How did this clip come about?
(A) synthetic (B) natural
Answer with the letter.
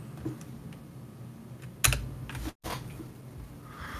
B